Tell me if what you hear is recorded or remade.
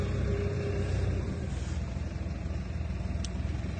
recorded